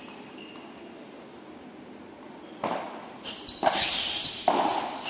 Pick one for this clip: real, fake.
real